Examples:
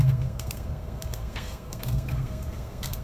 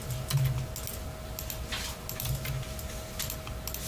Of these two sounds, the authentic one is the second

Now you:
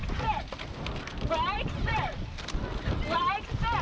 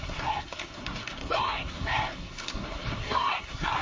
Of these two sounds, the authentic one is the first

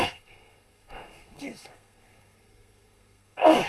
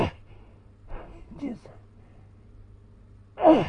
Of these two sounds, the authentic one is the second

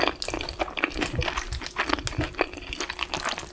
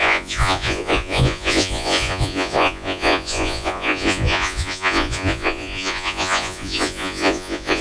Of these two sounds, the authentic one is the first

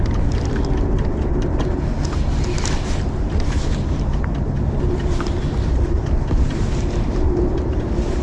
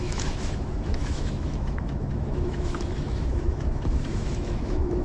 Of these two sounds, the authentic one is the first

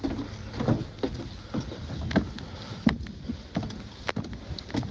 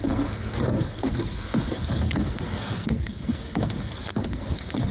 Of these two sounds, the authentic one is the first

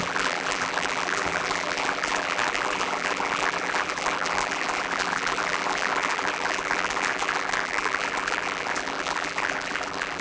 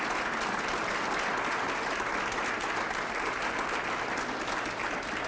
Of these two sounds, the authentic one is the second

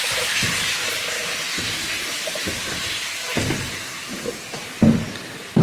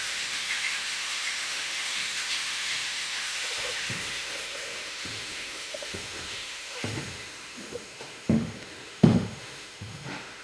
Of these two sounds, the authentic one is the first